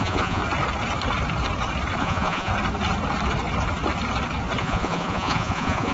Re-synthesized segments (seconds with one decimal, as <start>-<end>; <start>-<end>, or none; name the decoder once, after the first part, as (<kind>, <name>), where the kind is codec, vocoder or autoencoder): 0.0-0.4 (vocoder, Vocos); 2.0-2.5; 4.6-5.9

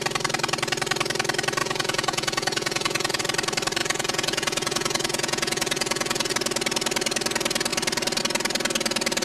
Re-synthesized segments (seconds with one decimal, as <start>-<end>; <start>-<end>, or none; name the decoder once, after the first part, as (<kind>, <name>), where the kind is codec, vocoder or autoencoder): 1.6-3.2 (vocoder, Vocos); 3.8-6.3